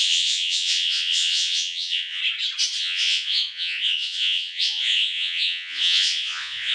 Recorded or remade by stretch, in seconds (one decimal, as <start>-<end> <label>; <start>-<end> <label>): 0.0-2.2 remade; 2.2-2.8 recorded; 2.8-6.7 remade